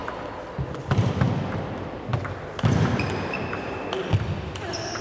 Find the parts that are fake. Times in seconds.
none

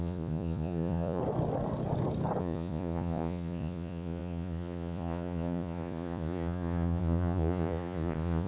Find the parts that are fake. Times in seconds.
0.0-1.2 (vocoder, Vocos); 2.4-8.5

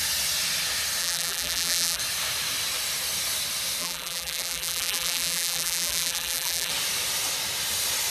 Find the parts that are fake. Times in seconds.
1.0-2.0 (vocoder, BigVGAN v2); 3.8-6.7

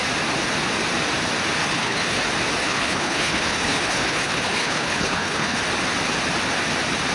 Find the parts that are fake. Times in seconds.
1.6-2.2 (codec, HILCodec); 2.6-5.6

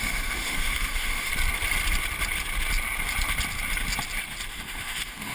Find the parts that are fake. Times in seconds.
0.0-1.3 (autoencoder, DAC-VAE); 4.5-5.3